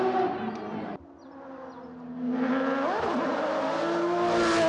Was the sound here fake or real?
real